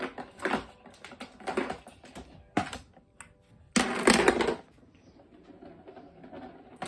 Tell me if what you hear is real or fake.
real